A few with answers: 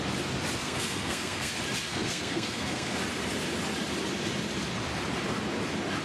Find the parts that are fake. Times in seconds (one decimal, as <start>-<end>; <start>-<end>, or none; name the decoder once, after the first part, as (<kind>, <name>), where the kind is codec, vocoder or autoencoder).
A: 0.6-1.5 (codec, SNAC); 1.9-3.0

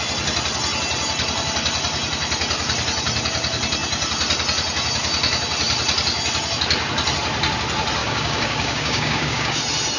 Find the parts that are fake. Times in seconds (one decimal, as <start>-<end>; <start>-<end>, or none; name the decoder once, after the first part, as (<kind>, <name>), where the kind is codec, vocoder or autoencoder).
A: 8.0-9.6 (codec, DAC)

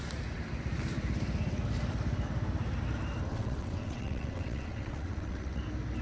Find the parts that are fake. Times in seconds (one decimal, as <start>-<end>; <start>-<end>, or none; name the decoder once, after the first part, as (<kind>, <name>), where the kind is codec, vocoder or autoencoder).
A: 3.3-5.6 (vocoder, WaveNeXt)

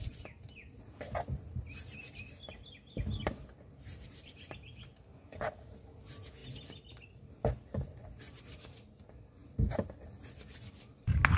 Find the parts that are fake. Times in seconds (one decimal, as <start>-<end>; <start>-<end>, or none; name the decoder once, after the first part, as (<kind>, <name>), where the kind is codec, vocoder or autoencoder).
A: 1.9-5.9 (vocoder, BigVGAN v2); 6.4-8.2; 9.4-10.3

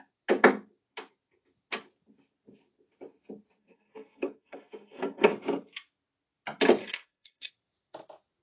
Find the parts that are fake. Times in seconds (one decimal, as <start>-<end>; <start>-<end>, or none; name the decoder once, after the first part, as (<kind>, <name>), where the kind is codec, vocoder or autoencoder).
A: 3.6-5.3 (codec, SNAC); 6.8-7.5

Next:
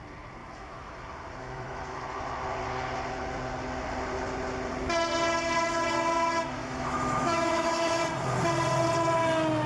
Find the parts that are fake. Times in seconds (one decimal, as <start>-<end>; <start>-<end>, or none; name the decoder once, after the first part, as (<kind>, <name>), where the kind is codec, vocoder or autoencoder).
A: 0.4-1.0 (autoencoder, DAC-VAE); 1.4-2.0; 6.6-8.0

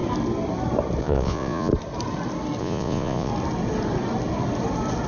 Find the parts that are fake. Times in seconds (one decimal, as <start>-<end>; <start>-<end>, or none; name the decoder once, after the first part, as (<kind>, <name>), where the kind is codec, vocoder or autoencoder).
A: 1.0-1.7 (vocoder, Vocos); 2.6-3.3